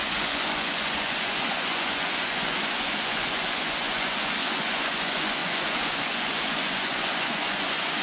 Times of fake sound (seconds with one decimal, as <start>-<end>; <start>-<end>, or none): 0.0-8.0